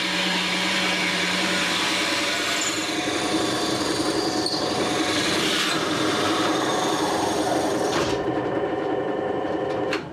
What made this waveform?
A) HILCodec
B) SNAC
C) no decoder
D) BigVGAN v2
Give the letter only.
D